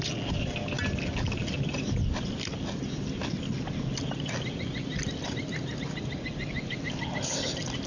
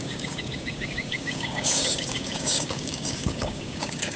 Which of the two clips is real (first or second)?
first